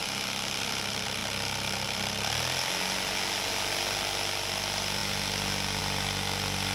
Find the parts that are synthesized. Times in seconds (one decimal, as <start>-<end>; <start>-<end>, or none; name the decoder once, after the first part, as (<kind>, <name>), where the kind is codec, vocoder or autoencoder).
0.0-1.2 (vocoder, BigVGAN v2); 4.5-5.0; 5.8-6.7